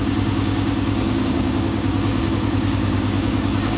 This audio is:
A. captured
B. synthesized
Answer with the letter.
B